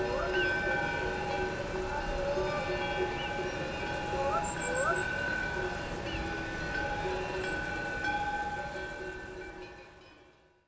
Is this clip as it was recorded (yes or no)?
yes